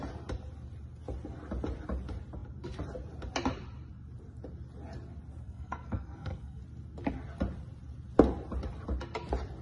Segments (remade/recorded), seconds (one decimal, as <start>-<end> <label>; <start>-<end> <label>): 0.0-5.4 recorded; 5.4-6.6 remade; 6.6-9.6 recorded